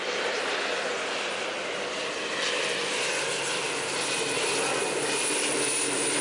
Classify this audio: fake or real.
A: real